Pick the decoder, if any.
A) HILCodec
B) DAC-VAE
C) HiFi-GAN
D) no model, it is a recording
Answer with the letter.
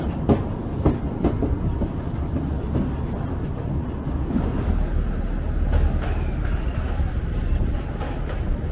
D